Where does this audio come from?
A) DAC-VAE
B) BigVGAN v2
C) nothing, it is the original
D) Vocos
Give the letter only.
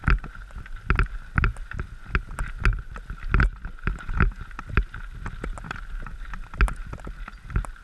C